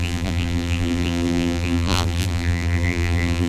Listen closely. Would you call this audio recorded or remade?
remade